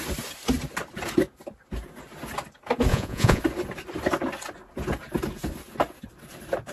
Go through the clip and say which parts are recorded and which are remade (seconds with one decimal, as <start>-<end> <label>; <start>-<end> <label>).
0.0-2.9 recorded; 2.9-3.4 remade; 3.4-6.7 recorded